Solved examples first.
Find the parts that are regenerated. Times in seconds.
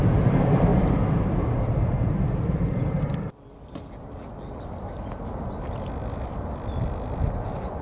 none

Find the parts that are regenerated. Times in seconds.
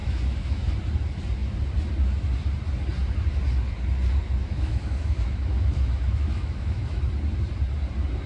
0.0-0.7; 4.4-7.0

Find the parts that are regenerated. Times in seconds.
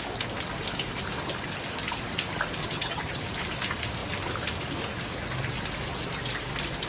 2.6-3.2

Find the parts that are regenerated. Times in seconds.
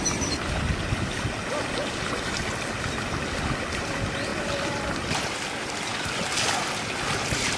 4.3-4.9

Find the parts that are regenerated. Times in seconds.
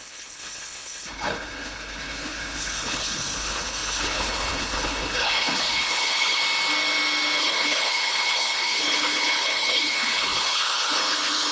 0.0-6.4; 7.4-11.5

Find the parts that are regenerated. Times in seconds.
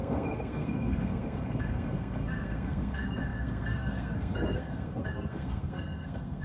0.0-6.4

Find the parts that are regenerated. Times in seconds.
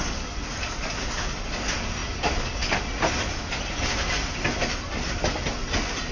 none